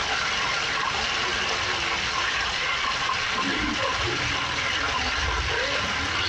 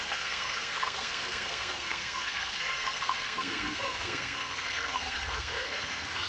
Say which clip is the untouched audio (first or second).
first